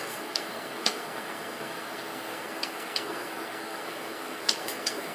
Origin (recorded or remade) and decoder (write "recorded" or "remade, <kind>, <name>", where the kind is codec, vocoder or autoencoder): remade, codec, SNAC